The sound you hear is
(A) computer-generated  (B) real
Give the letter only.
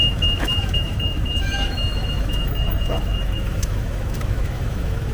A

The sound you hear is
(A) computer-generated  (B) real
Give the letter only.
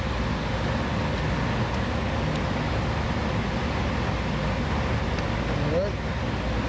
B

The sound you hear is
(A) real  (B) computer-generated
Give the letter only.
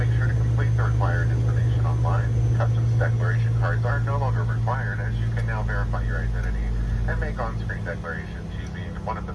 A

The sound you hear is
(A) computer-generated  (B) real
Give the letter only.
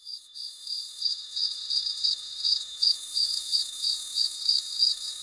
A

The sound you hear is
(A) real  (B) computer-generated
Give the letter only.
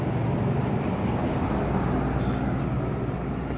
A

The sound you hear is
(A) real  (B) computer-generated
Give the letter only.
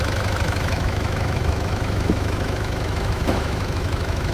B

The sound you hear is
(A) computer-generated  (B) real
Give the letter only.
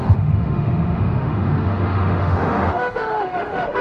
A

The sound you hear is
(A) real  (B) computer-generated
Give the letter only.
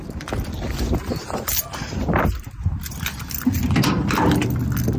A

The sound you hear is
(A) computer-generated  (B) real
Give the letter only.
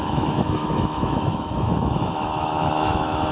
A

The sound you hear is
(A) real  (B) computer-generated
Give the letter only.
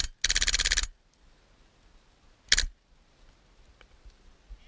A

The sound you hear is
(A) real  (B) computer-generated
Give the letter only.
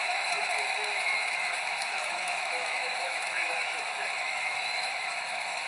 B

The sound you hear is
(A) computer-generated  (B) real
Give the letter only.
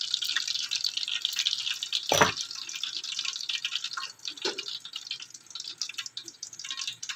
B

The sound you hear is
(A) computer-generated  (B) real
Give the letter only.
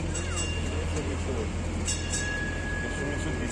B